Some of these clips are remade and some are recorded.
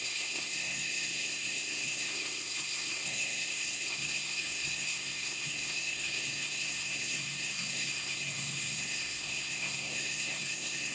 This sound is remade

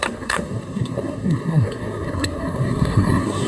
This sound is remade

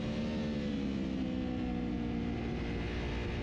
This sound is recorded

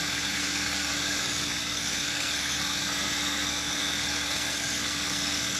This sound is remade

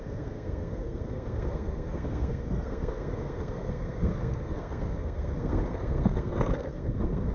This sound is remade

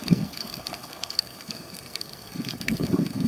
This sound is remade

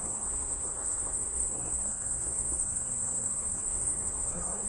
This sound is remade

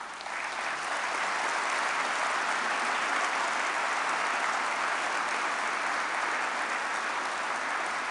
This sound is recorded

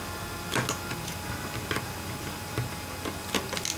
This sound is recorded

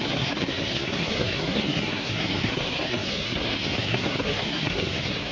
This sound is remade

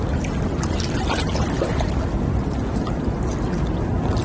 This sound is recorded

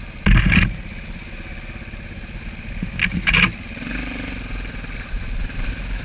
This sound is recorded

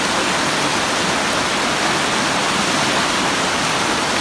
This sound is recorded